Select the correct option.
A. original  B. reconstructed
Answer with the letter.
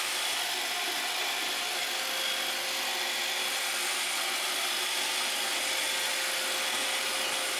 A